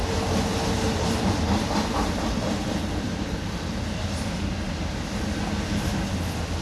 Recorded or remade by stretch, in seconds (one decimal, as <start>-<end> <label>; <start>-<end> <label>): 0.0-3.8 remade; 3.8-6.6 recorded